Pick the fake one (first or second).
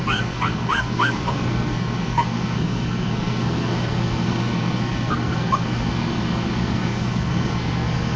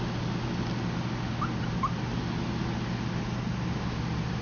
first